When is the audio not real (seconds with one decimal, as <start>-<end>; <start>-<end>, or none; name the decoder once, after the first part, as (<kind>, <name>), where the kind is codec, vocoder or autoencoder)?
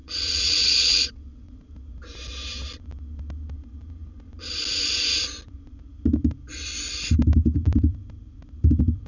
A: 0.0-1.6 (vocoder, WaveNeXt)